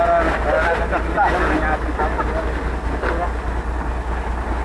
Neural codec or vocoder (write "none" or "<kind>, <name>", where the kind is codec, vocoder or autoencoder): none